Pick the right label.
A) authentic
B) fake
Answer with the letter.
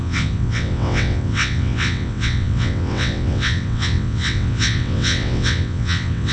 B